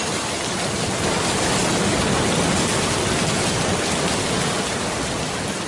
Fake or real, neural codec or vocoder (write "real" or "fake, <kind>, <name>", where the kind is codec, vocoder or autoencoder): real